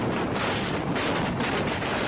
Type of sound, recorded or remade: recorded